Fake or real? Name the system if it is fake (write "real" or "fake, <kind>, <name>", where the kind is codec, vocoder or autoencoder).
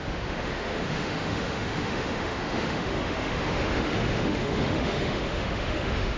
fake, autoencoder, DAC-VAE